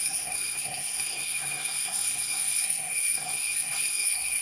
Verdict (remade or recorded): remade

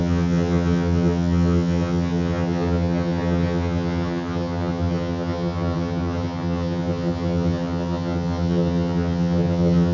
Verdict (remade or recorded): remade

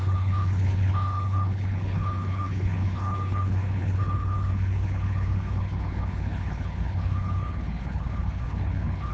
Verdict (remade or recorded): remade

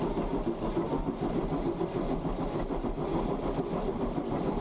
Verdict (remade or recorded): recorded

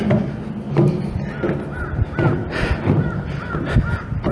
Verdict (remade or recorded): recorded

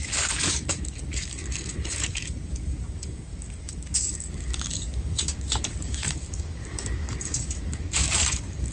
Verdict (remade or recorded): remade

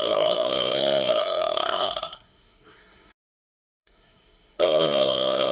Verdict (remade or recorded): remade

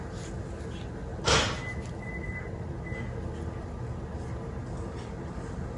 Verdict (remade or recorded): recorded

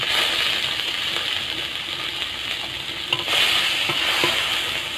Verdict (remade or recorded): recorded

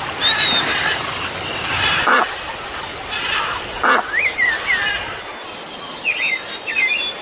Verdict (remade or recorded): recorded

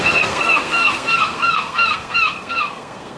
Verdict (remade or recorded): remade